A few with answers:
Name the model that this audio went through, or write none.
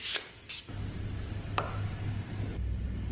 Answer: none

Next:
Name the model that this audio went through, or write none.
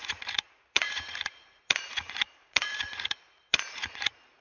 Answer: vocoder, Vocos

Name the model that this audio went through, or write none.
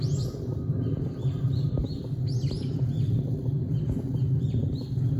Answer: none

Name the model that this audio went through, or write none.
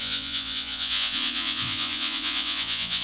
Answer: vocoder, Vocos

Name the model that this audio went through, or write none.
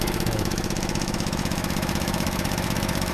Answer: autoencoder, DAC-VAE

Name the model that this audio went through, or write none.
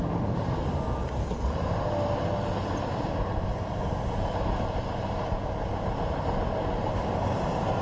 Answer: none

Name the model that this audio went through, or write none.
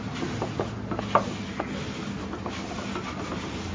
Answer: none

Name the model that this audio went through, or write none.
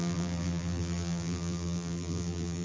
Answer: vocoder, BigVGAN v2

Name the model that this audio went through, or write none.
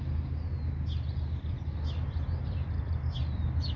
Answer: none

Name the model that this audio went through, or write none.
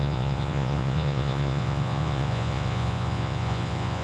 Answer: vocoder, Vocos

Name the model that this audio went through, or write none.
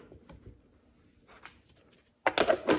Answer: none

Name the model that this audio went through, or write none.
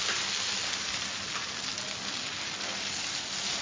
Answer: none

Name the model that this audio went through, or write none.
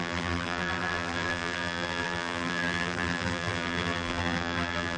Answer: vocoder, BigVGAN v2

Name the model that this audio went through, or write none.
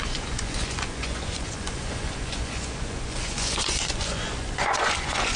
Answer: vocoder, Vocos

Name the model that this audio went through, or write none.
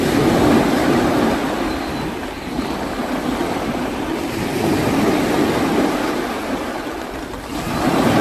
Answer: none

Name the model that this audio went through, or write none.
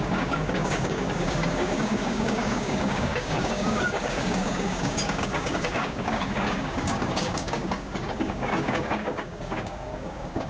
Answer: codec, DAC